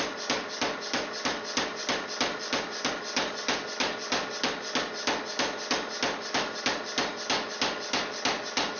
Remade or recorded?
recorded